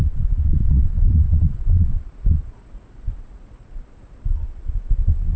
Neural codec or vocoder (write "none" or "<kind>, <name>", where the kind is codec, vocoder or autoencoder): vocoder, Vocos